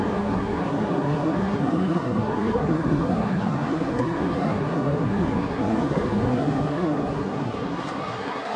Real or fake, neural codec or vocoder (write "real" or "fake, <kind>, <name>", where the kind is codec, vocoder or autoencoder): fake, codec, SNAC